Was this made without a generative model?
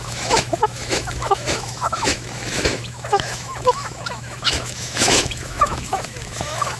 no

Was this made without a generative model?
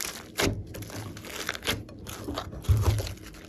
yes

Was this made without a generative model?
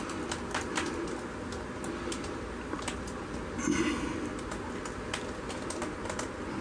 yes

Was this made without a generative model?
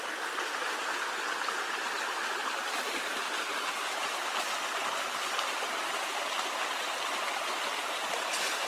yes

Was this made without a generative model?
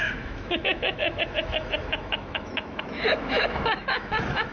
no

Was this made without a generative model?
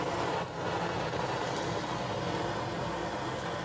yes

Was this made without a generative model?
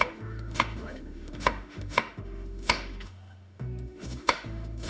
no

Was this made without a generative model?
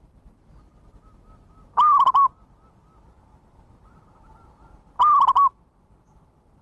yes